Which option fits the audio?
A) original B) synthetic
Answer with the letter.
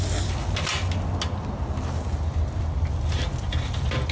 A